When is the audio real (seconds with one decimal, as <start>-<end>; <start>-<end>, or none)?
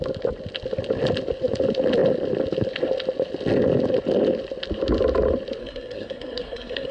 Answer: 0.0-5.6